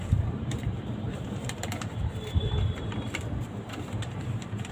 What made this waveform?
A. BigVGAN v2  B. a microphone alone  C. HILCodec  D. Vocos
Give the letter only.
A